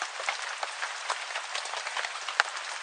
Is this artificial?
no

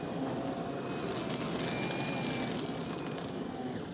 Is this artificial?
no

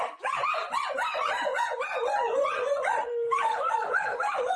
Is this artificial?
yes